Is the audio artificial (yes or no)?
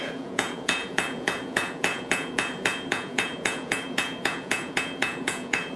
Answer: yes